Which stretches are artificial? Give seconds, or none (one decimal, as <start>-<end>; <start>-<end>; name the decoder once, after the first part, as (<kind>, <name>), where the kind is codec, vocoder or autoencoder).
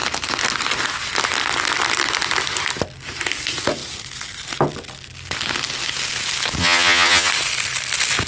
6.6-7.3 (vocoder, HiFi-GAN)